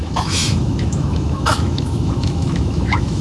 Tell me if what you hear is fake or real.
fake